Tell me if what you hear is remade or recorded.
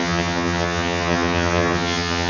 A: remade